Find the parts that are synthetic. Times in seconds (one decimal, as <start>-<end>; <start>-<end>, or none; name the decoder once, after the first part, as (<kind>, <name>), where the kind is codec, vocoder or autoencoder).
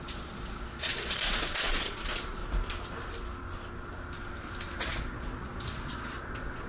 0.0-2.4 (vocoder, Vocos); 4.8-6.7